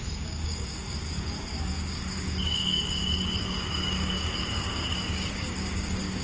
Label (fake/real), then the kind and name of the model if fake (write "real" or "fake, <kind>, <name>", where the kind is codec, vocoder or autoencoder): fake, codec, DAC